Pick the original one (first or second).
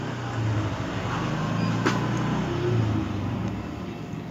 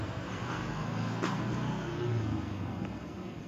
first